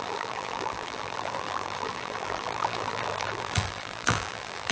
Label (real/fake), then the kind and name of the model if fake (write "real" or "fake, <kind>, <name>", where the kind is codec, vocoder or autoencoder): fake, vocoder, BigVGAN v2